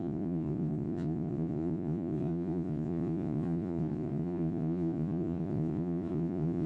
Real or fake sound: fake